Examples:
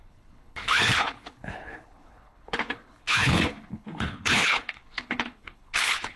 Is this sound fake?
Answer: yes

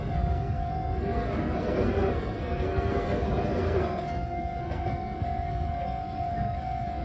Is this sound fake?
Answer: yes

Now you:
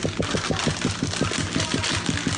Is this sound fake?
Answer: no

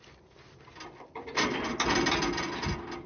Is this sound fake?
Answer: no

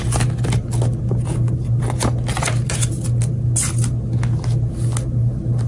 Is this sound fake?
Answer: no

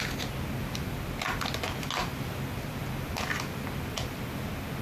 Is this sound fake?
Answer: no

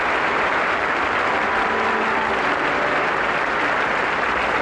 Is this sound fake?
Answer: no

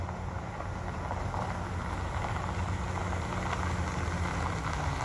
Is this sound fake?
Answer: no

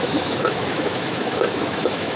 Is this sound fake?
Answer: yes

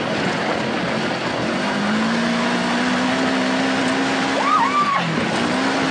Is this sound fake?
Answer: no